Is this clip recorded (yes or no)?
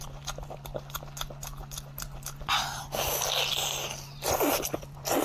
yes